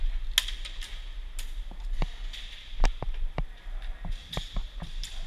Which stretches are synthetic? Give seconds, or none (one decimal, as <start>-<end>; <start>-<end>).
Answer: 4.2-4.7

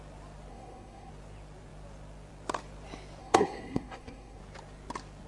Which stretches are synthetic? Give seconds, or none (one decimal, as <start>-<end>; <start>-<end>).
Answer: 0.5-1.1; 3.2-4.4

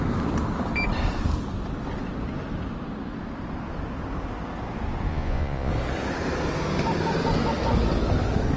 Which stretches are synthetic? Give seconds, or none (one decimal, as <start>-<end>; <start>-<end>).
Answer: 5.1-5.7

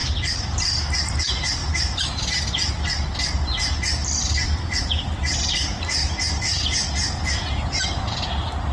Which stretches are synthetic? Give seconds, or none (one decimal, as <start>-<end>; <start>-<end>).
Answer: 1.6-2.7; 4.0-5.4; 6.0-6.9

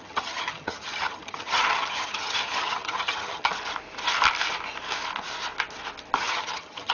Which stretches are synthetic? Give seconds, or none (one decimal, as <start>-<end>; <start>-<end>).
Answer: 0.0-3.5; 6.2-6.9

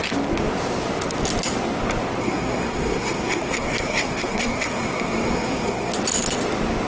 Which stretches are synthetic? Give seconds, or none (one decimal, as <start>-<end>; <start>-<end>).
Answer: 2.2-5.9

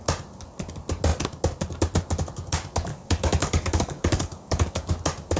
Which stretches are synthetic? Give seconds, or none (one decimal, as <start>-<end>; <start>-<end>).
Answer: 2.9-4.9

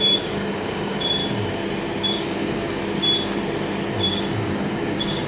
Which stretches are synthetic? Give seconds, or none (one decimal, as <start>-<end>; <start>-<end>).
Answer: 0.0-1.2; 2.1-2.8; 3.9-5.3